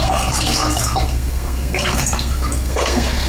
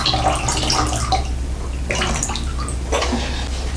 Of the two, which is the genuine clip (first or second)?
second